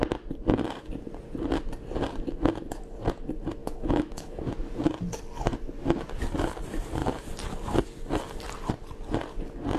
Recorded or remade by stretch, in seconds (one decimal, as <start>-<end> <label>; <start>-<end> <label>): 0.0-3.6 recorded; 3.6-4.5 remade; 4.5-9.8 recorded